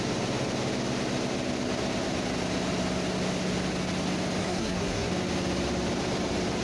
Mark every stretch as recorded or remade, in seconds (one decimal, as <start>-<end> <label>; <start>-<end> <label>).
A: 0.0-4.4 recorded; 4.4-5.1 remade; 5.1-6.6 recorded